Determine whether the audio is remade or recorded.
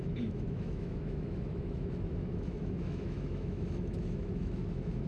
remade